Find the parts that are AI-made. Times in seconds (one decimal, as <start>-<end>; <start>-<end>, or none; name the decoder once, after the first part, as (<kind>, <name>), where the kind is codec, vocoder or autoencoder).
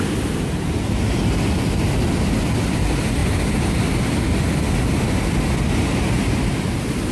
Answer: none